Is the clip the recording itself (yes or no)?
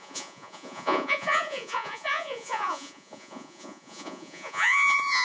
no